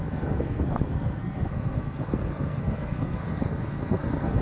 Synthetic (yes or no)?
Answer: yes